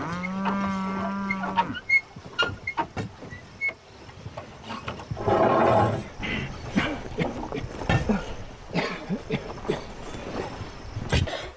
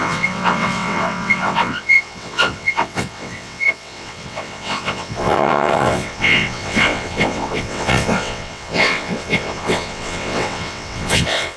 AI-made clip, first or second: second